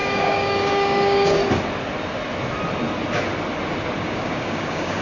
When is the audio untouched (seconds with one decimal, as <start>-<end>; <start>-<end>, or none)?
1.4-4.0